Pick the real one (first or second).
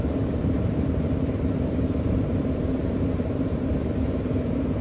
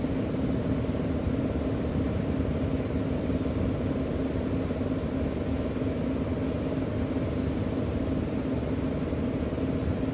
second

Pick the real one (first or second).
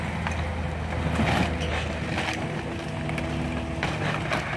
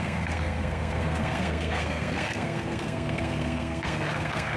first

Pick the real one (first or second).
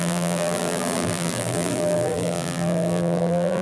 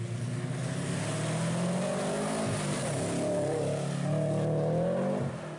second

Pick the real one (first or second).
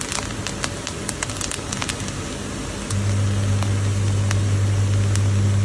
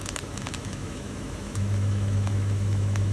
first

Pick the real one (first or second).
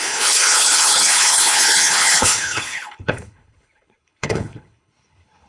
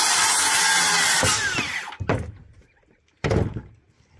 second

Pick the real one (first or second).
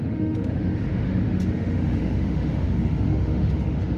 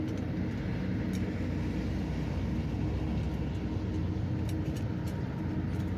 second